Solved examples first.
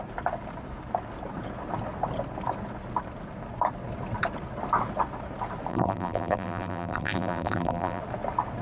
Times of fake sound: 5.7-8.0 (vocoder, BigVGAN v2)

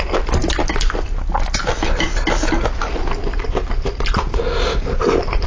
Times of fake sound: none

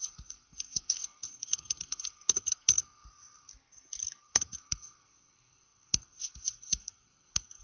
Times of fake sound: 0.0-3.5 (codec, SNAC); 4.2-7.6

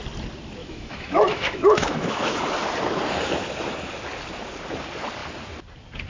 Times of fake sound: 0.6-2.4 (autoencoder, DAC-VAE)

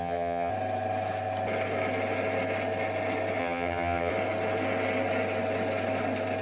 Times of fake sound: 0.0-0.5 (vocoder, HiFi-GAN); 3.4-4.1

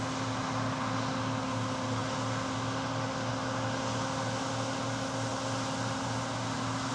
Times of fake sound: none